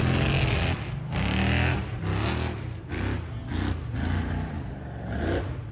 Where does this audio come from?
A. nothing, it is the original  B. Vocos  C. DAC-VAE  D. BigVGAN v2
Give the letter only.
A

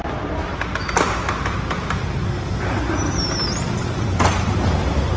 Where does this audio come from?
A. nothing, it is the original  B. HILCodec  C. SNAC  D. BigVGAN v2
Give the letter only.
A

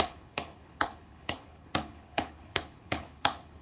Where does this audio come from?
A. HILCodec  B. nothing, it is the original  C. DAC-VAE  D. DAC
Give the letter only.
A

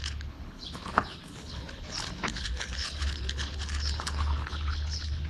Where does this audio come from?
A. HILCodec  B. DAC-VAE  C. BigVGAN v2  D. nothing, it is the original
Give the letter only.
A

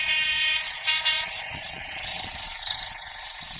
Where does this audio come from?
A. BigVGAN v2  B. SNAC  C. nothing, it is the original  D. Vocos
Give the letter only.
D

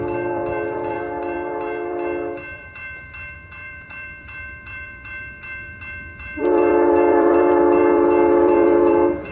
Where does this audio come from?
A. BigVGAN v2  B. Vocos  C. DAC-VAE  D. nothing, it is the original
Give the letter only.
A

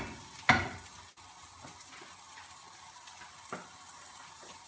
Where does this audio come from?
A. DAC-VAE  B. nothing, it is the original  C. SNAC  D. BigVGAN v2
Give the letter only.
B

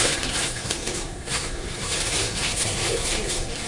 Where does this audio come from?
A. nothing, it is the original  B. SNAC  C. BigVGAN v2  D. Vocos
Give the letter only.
B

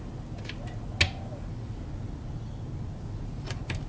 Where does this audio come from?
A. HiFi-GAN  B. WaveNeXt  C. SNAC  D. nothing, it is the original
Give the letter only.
D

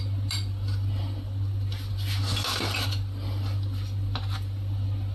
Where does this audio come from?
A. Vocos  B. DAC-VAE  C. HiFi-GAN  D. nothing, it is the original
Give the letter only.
D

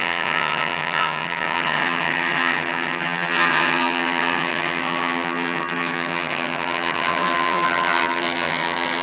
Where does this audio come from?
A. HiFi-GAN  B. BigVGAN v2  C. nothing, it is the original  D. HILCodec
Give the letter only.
A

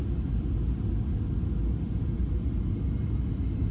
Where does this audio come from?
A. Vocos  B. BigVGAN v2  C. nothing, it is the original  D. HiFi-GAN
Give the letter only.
C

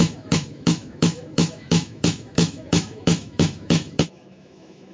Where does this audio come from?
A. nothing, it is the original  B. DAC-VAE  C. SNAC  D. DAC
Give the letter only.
B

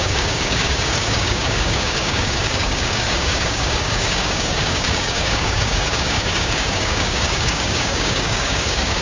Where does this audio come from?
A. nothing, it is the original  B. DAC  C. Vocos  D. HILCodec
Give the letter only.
B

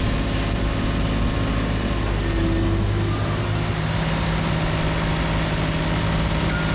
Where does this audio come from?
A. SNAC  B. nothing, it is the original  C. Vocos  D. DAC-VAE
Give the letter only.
B